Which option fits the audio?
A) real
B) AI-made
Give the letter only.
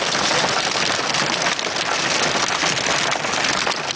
A